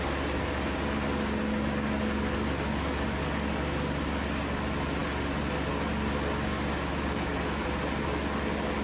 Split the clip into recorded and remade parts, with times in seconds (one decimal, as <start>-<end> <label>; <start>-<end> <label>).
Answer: 0.0-8.8 recorded